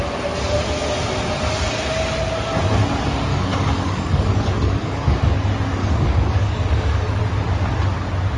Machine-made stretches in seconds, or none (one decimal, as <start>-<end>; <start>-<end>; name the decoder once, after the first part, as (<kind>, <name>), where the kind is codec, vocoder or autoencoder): 3.3-5.3 (codec, DAC); 5.8-7.2